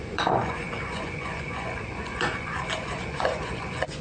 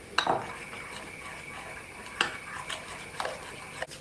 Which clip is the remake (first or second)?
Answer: first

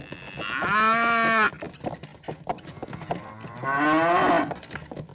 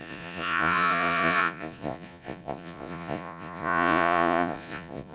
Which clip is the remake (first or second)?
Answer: second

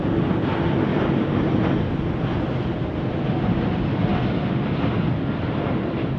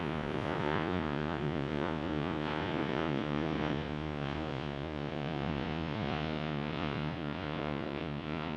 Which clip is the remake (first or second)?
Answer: second